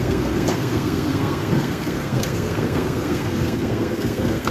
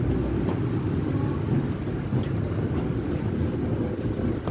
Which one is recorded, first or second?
second